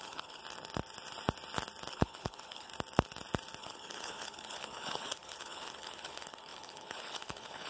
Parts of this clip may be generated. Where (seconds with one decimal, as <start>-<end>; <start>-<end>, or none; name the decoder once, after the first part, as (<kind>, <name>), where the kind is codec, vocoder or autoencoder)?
0.0-0.4 (codec, HILCodec); 1.9-2.7; 3.6-7.7